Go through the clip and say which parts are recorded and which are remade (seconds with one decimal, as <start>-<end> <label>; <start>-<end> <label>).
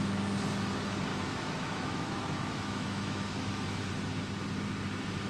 0.0-1.1 recorded; 1.1-3.9 remade; 3.9-5.3 recorded